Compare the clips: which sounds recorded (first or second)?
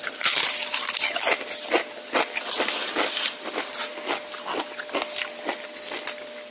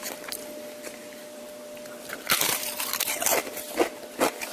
first